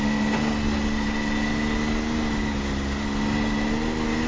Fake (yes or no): no